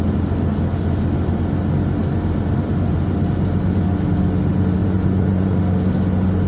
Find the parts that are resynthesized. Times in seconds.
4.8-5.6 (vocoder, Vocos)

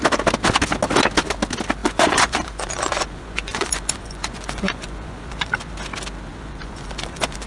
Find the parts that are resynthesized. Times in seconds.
1.8-5.7 (vocoder, Vocos); 6.3-7.5

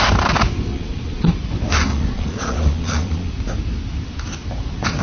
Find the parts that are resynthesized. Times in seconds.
0.7-1.3 (vocoder, Vocos); 1.9-3.3

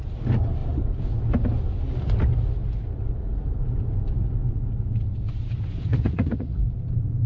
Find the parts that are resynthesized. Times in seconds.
5.9-6.6 (vocoder, Vocos)

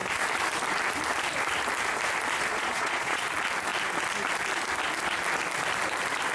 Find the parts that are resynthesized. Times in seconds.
2.5-3.2 (vocoder, Vocos)